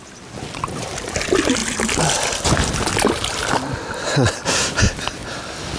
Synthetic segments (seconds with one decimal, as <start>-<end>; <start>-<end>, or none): none